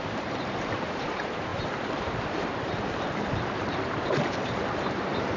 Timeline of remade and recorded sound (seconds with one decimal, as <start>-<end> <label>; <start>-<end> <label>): 0.0-5.4 remade